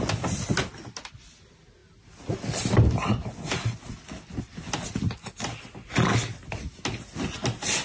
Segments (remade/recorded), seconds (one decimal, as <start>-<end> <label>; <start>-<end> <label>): 0.0-7.8 recorded

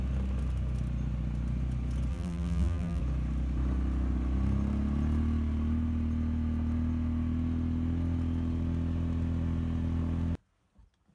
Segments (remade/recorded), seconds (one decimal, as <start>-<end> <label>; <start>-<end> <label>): 0.0-2.1 recorded; 2.1-3.0 remade; 3.0-11.1 recorded

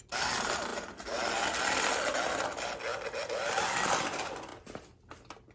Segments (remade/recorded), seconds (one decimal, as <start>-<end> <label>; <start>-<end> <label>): 0.0-5.5 recorded